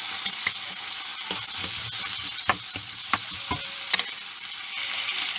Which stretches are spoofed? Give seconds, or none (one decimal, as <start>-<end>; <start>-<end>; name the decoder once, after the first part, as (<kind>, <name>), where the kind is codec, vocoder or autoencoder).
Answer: none